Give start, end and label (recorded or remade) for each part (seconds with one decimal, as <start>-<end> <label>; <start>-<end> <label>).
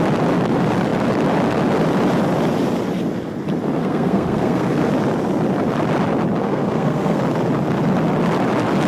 0.0-3.8 recorded; 3.8-4.9 remade; 4.9-6.4 recorded; 6.4-7.2 remade; 7.2-8.9 recorded